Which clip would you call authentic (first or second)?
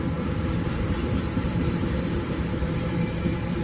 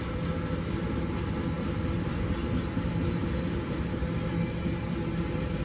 second